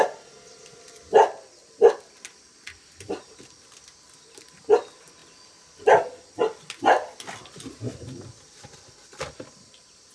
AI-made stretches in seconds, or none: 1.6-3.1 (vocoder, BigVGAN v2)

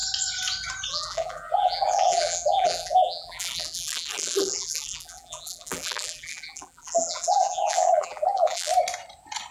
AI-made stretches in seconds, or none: 0.9-8.7 (vocoder, BigVGAN v2)

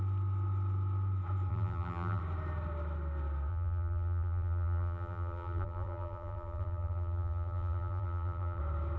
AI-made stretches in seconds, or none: 1.5-2.2 (vocoder, BigVGAN v2); 3.5-8.6

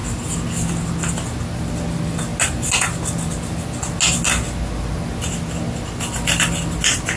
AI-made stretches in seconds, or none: none

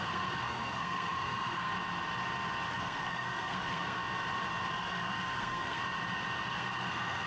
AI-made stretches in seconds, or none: 0.0-1.7 (codec, SNAC); 2.7-4.0; 4.7-5.8; 6.5-7.3